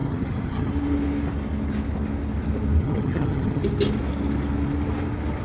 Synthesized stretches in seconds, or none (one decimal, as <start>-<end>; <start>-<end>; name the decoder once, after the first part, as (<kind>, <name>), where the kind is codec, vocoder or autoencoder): 0.0-0.7 (vocoder, HiFi-GAN); 2.8-3.6